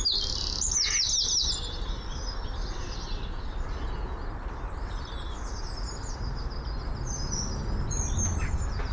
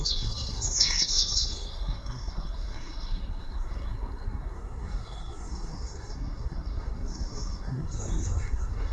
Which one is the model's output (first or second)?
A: second